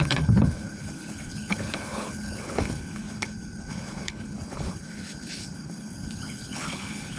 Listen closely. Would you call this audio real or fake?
fake